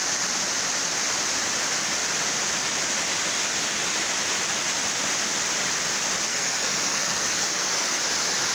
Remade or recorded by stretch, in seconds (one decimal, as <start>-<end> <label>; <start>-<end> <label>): 0.0-6.3 recorded; 6.3-8.0 remade; 8.0-8.5 recorded